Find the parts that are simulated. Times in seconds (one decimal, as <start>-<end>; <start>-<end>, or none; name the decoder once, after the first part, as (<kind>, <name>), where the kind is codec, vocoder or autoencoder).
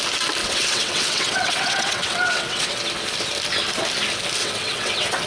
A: 0.4-2.8 (vocoder, WaveNeXt); 4.4-5.3